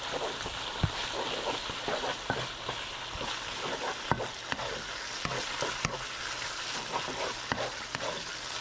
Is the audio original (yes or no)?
yes